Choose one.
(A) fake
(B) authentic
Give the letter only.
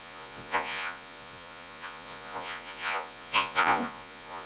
A